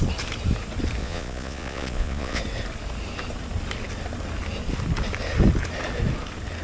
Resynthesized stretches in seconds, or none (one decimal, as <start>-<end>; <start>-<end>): 1.0-2.4